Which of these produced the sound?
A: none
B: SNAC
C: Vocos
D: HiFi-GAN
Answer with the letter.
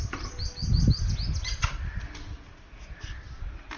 A